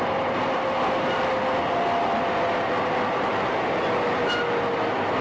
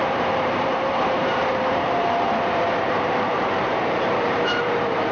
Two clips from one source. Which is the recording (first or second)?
first